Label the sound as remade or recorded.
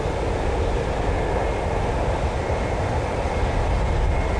recorded